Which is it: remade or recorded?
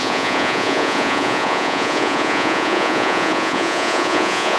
remade